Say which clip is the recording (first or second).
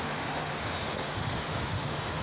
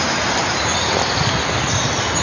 second